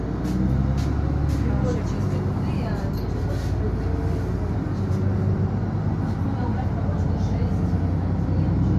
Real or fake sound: real